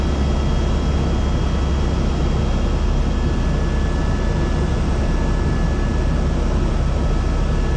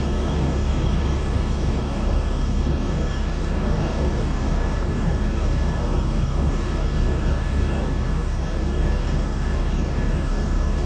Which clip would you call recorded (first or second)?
first